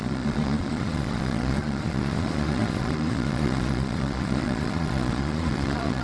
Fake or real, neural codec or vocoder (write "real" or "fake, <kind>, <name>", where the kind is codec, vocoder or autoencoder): fake, vocoder, Vocos